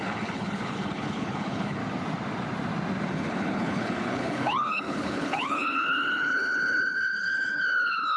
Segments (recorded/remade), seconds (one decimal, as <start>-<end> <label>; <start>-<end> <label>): 0.0-1.8 remade; 1.8-3.1 recorded; 3.1-8.2 remade